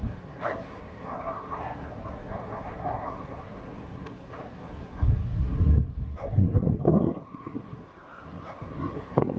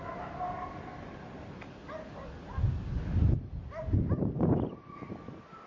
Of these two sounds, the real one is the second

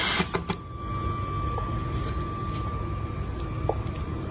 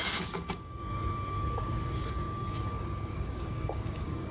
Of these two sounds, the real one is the first